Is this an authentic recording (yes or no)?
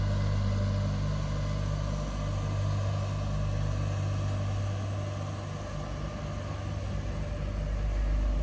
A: yes